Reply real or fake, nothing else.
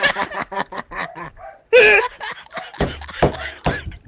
real